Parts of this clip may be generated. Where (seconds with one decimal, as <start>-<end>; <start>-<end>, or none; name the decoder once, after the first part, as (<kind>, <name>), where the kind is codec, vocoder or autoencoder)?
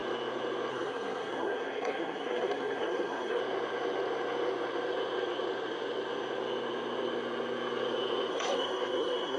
0.7-3.4 (codec, SNAC); 8.3-9.4